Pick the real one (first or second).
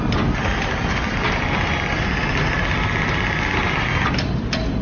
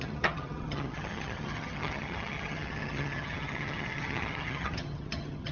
first